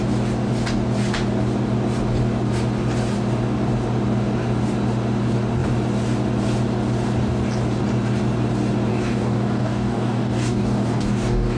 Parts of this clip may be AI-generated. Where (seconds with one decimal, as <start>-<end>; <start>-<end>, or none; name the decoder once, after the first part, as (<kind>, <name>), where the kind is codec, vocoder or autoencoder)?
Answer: 8.9-11.6 (codec, DAC)